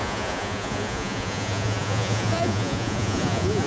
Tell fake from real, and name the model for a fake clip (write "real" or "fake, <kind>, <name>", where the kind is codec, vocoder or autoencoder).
fake, vocoder, Vocos